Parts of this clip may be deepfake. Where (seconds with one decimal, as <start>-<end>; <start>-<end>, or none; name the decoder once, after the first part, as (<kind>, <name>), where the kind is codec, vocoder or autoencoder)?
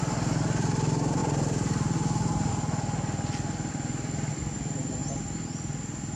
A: none